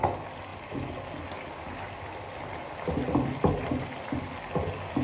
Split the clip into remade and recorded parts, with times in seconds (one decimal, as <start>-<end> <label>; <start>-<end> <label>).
0.0-5.0 recorded